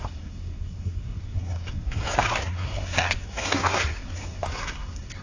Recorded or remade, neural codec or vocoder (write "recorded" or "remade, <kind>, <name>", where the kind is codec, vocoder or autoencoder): remade, codec, SNAC